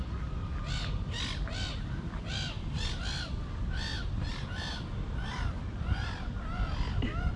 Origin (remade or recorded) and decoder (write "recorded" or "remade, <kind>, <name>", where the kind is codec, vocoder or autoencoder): recorded